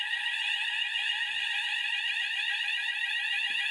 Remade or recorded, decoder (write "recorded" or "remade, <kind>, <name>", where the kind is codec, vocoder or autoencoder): remade, vocoder, BigVGAN v2